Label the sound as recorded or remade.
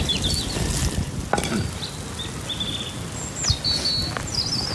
recorded